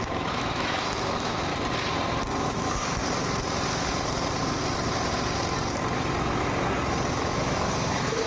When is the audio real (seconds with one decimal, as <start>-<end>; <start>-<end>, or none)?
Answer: 1.5-2.4; 3.0-7.1